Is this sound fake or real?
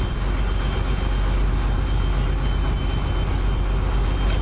real